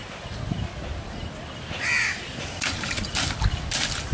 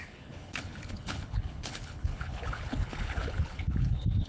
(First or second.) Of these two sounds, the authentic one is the first